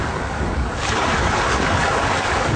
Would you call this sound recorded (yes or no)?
no